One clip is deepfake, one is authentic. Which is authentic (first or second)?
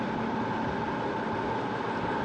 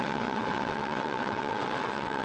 first